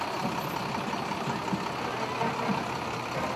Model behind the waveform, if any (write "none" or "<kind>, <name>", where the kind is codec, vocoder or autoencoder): none